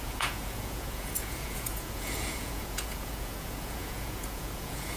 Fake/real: fake